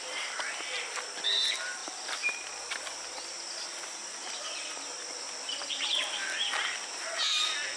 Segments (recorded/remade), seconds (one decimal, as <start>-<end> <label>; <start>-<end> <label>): 0.0-7.8 recorded